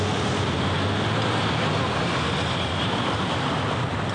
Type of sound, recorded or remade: recorded